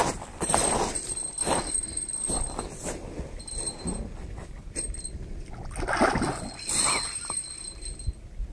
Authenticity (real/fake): real